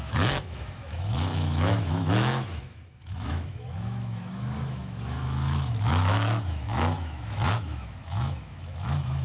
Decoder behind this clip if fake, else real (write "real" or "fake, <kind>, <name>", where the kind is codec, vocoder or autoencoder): fake, autoencoder, DAC-VAE